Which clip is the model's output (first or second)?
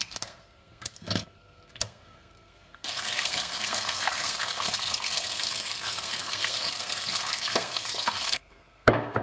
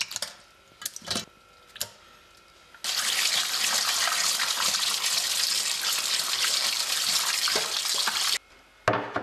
first